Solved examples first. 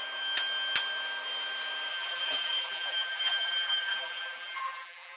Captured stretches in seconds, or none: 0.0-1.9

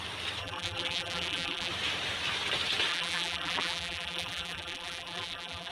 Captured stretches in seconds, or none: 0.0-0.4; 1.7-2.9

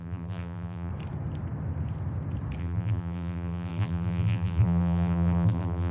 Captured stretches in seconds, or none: 0.9-2.6